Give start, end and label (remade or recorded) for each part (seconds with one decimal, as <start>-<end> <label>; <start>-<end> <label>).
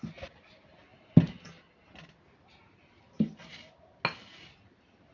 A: 0.0-5.1 recorded